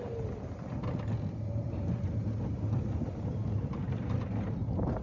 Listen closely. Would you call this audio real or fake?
real